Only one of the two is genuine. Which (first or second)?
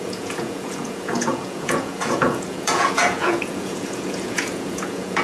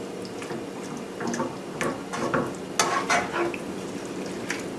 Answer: second